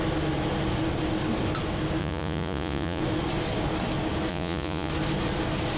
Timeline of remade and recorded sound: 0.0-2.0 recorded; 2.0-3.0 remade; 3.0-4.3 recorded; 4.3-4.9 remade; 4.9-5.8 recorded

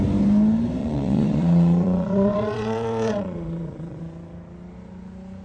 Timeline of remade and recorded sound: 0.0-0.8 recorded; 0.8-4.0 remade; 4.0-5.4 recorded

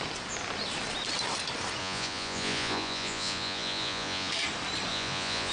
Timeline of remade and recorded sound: 0.0-1.8 recorded; 1.8-4.3 remade; 4.3-4.9 recorded; 4.9-5.5 remade

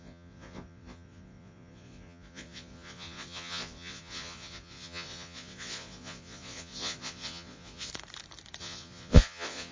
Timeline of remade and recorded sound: 0.0-7.9 remade; 7.9-8.6 recorded; 8.6-9.7 remade